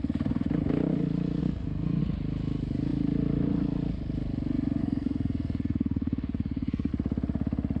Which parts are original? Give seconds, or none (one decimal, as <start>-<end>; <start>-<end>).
0.0-1.4; 2.0-4.8; 6.9-7.8

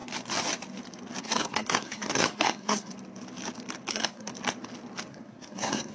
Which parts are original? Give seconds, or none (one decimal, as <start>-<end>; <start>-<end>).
0.0-1.2; 2.9-3.9; 4.3-5.1

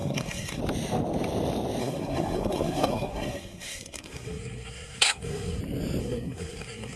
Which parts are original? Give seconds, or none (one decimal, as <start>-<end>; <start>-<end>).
0.6-1.8; 5.6-6.0

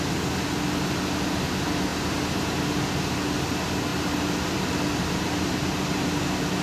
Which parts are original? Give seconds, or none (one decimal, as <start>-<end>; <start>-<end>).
0.0-6.6

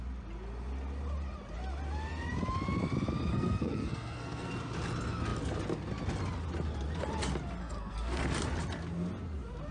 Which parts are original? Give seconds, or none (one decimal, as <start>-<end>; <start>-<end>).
0.0-3.3; 4.5-7.6; 8.2-9.7